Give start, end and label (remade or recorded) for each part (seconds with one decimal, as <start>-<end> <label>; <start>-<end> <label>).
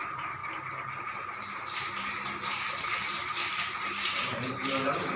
0.0-0.4 remade; 0.4-1.0 recorded; 1.0-5.2 remade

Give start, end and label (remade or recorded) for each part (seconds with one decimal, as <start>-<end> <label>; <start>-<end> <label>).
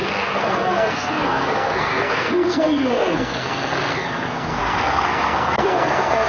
0.0-6.3 remade